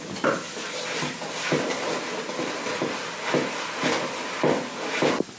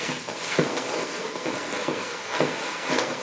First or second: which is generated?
second